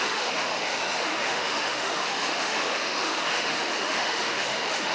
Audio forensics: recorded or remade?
remade